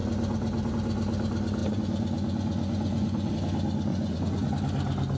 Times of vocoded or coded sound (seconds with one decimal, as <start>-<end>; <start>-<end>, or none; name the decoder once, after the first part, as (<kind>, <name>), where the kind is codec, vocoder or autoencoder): 1.6-3.3 (vocoder, Vocos); 3.9-4.5